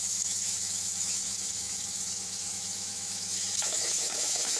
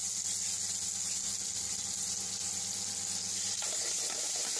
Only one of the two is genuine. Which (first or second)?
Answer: second